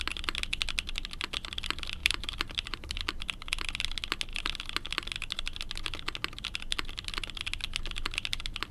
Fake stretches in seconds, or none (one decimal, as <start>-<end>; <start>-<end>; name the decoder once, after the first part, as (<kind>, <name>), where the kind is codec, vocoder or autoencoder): 2.0-3.2 (vocoder, BigVGAN v2)